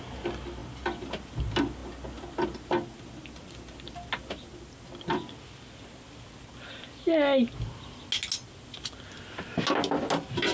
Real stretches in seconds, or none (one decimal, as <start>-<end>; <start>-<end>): 0.0-10.5